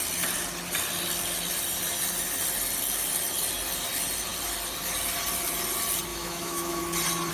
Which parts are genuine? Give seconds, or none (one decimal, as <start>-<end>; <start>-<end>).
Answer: 0.0-6.1; 6.8-7.3